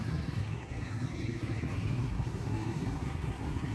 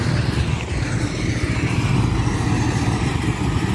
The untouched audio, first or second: second